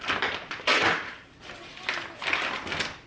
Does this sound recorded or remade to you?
recorded